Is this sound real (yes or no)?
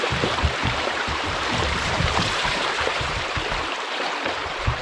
no